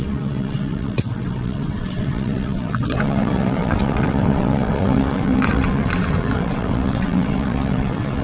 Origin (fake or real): fake